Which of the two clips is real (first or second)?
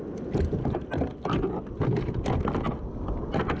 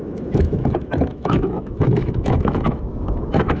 first